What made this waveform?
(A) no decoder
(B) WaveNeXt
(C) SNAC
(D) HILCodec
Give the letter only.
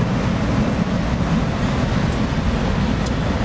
A